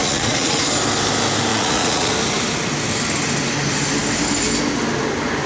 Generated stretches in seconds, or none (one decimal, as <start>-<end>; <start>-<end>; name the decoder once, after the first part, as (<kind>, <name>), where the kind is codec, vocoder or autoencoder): 0.0-0.6 (vocoder, Vocos); 1.5-2.1